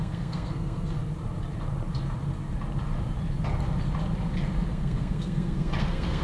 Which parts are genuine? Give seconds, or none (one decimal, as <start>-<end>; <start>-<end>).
1.0-4.7